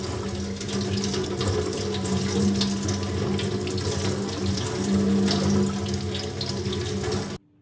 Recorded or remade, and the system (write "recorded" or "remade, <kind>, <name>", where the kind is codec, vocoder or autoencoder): recorded